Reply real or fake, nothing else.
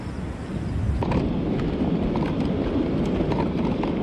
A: real